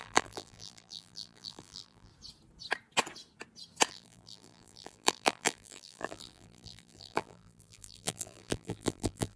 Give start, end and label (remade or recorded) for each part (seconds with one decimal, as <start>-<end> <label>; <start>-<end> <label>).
0.0-2.1 remade; 2.1-3.9 recorded; 3.9-9.4 remade